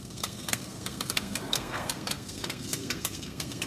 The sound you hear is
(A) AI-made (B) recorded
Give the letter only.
A